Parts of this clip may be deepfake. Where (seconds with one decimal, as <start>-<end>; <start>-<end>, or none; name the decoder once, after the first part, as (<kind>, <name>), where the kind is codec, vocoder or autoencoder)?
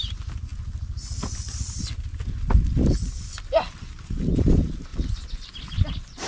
none